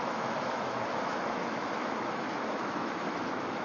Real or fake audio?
fake